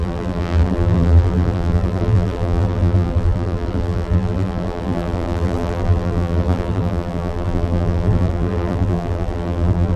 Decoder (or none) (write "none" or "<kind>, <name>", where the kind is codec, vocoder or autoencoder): vocoder, BigVGAN v2